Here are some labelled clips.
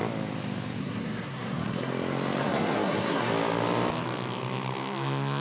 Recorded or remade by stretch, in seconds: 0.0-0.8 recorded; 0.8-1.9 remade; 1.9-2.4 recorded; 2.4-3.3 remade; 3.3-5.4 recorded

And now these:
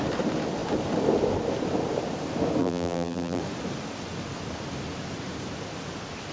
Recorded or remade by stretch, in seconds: 0.0-2.6 recorded; 2.6-3.4 remade; 3.4-6.3 recorded

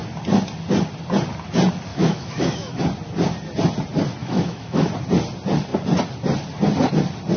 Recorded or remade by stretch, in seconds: 0.0-1.9 recorded; 1.9-2.8 remade; 2.8-4.2 recorded; 4.2-4.9 remade; 4.9-7.4 recorded

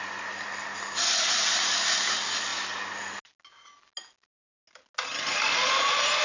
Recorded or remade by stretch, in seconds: 0.0-6.2 recorded